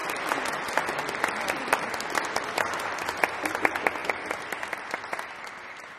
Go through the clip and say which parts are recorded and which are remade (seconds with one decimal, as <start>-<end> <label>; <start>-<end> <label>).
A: 0.0-6.0 remade